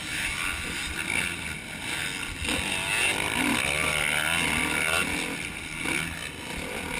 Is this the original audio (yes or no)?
yes